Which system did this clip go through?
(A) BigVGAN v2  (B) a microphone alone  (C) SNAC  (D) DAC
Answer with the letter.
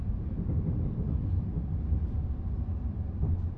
B